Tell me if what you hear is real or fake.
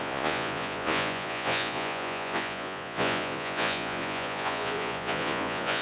fake